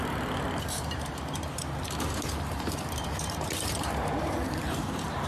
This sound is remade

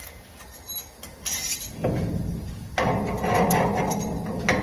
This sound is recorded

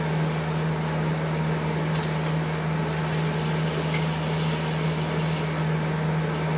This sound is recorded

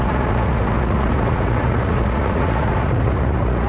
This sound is remade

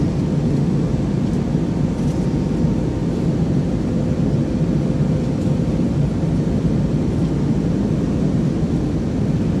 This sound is recorded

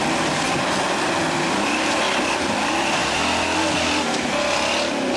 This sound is recorded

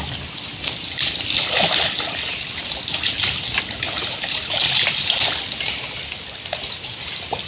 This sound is recorded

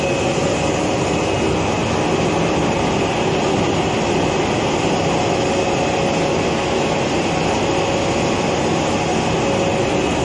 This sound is recorded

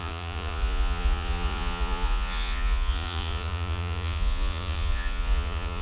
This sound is remade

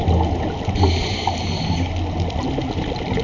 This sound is recorded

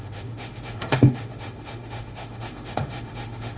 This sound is remade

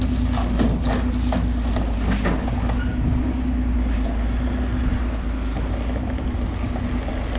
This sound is recorded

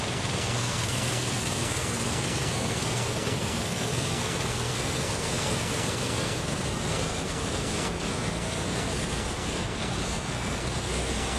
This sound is remade